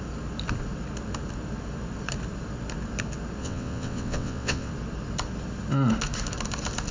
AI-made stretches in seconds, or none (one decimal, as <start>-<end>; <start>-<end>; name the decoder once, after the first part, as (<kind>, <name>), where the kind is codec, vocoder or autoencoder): 3.4-4.7 (vocoder, WaveNeXt)